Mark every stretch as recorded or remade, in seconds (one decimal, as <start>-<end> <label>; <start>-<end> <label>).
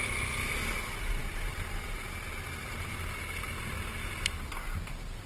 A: 0.0-5.3 recorded